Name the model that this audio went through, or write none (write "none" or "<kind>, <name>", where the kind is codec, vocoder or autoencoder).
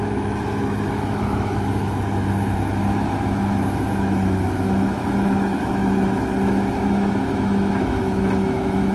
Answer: autoencoder, DAC-VAE